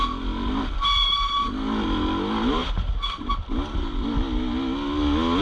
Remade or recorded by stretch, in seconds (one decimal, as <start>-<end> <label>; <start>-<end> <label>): 0.0-5.4 recorded